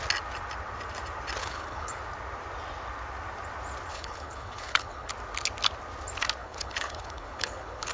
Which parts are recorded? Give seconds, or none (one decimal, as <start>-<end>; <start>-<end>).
0.0-1.4; 2.0-3.9; 5.1-6.4